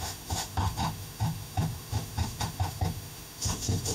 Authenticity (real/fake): fake